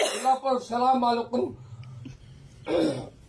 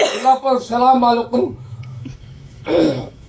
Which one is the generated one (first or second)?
second